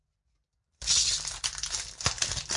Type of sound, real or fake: real